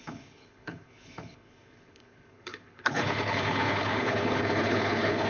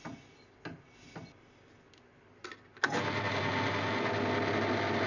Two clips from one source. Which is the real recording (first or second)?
second